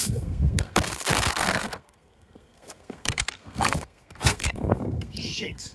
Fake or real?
fake